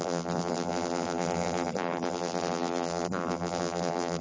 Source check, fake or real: fake